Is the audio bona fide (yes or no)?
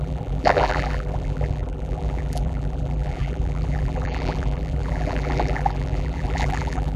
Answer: no